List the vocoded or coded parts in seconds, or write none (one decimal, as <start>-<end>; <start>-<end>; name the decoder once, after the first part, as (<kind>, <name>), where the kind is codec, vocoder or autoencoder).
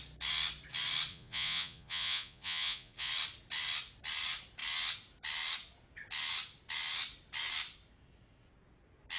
1.1-3.1 (vocoder, Vocos)